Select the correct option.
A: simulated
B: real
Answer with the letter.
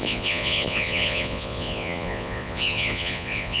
A